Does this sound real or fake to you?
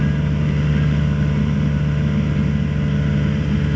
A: real